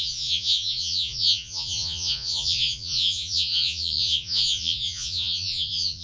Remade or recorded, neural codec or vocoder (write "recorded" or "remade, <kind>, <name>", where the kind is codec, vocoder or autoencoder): remade, vocoder, Vocos